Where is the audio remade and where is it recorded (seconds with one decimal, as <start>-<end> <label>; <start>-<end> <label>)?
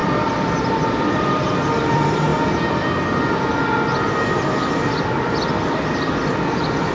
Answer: 0.0-2.3 remade; 2.3-5.7 recorded; 5.7-6.9 remade